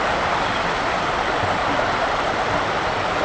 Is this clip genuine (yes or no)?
yes